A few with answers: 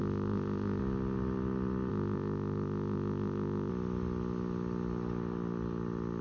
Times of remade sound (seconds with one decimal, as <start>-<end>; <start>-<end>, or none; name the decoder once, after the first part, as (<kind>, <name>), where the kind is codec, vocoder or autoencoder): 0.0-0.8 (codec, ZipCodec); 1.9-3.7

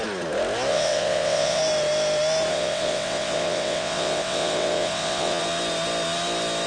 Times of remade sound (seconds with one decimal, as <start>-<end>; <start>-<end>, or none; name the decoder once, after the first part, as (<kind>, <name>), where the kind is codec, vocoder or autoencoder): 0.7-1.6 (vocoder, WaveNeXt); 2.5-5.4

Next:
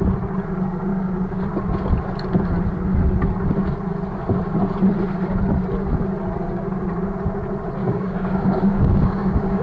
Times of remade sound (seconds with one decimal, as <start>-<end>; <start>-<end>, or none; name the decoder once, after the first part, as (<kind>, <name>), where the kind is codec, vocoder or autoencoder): 0.9-1.4 (codec, DAC); 7.8-9.6